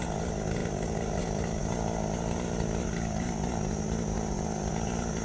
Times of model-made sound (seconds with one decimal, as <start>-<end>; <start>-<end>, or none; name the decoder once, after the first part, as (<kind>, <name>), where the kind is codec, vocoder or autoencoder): none